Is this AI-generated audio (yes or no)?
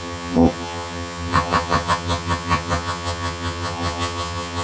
yes